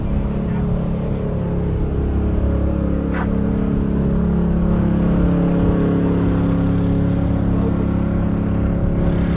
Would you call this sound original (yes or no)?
yes